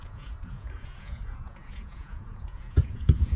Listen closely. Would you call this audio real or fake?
fake